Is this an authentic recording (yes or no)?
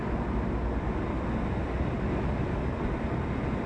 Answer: yes